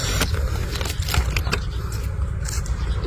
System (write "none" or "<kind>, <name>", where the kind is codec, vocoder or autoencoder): none